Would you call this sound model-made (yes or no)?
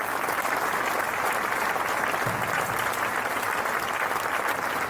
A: no